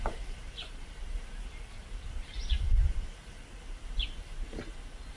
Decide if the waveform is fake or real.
fake